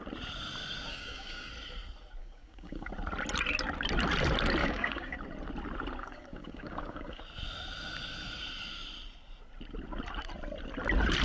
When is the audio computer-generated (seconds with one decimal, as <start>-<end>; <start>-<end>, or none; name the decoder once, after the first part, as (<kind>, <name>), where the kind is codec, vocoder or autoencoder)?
0.9-1.5 (codec, DAC); 2.2-2.9; 4.6-5.2; 6.0-7.2